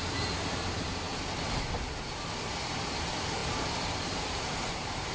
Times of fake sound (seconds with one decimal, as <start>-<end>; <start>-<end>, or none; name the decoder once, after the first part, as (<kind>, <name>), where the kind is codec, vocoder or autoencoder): 0.0-1.1 (vocoder, BigVGAN v2); 3.0-5.1